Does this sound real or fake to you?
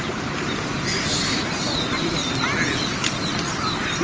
fake